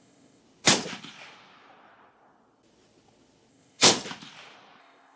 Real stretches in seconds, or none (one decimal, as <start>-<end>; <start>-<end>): 0.4-3.5; 3.9-4.8